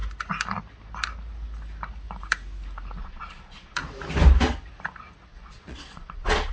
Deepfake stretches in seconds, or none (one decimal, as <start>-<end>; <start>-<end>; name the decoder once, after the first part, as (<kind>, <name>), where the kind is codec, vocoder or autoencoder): 3.0-3.7 (vocoder, Vocos); 5.3-6.5